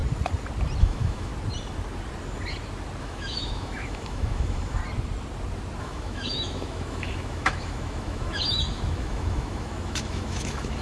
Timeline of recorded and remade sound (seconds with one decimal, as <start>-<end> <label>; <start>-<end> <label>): 0.0-0.8 recorded; 0.8-1.3 remade; 1.3-3.0 recorded; 3.0-4.8 remade; 4.8-5.8 recorded; 5.8-10.8 remade